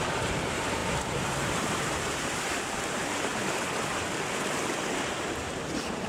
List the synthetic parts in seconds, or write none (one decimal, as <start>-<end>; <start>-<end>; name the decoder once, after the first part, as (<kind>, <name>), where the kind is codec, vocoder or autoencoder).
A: 0.0-3.3 (vocoder, BigVGAN v2); 5.2-6.1